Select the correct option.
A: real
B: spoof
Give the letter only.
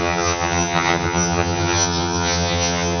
B